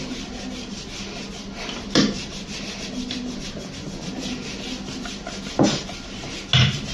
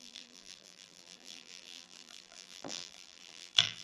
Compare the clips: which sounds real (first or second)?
first